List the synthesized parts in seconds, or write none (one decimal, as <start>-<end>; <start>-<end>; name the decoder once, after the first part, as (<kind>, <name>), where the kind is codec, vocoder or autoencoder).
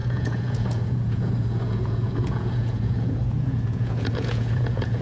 0.0-5.0 (vocoder, Vocos)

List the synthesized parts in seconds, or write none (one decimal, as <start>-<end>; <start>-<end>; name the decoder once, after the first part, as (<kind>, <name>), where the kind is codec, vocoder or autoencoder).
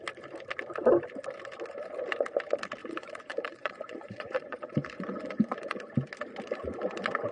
2.8-5.8 (vocoder, Vocos)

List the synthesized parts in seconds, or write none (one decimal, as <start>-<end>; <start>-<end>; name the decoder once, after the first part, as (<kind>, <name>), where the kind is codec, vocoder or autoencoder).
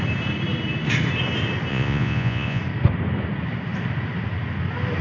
1.7-2.6 (vocoder, Vocos)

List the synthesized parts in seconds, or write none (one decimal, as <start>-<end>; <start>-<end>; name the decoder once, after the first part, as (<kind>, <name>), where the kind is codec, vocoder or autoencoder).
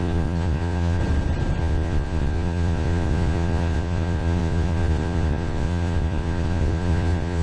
0.0-1.0 (vocoder, Vocos); 1.6-7.4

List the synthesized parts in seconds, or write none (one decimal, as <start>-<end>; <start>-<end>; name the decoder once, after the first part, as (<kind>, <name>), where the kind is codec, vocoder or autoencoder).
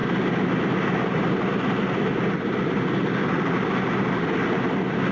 none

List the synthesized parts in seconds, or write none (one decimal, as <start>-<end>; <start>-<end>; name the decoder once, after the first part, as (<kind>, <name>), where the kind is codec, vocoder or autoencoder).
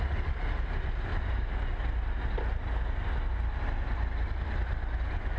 none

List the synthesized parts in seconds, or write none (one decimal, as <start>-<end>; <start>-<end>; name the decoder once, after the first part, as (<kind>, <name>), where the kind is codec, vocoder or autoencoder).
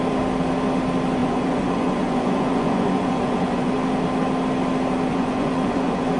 1.2-3.7 (vocoder, Vocos); 5.1-6.2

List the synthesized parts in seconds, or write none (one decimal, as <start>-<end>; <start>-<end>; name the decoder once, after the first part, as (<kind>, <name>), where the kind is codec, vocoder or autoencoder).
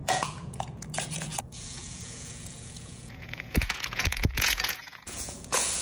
0.0-5.8 (vocoder, Vocos)